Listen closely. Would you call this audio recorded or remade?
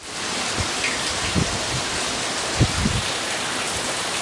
recorded